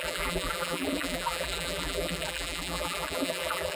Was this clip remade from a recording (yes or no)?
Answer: yes